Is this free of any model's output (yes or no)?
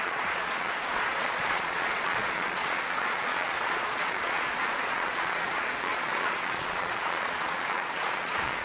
no